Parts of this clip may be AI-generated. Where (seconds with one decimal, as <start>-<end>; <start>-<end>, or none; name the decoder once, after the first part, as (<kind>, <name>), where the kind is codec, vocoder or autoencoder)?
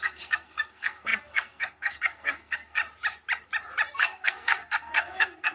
0.0-2.8 (codec, SNAC); 3.9-5.5